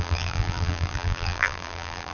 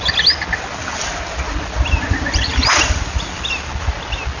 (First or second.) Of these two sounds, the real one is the second